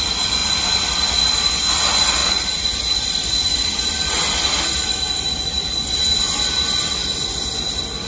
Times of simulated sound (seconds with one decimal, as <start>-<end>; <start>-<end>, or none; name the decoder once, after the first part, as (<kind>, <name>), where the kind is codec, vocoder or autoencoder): 0.4-1.5 (vocoder, BigVGAN v2); 2.2-6.2